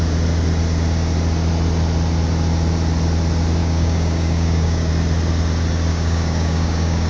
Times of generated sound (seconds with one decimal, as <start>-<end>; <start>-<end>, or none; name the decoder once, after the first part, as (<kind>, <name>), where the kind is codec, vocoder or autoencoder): 3.6-4.9 (codec, DAC); 5.9-7.1